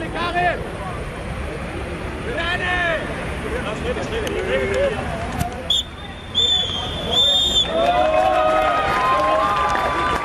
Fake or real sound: fake